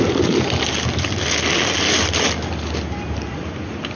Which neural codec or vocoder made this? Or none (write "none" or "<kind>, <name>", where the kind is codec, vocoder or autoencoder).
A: none